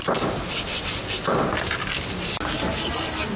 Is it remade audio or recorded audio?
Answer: recorded